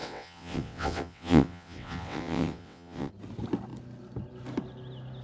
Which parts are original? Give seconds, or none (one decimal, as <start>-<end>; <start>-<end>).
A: 3.1-5.2